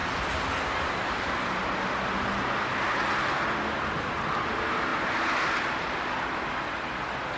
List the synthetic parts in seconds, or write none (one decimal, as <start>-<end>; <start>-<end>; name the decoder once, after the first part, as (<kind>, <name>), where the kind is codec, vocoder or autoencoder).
none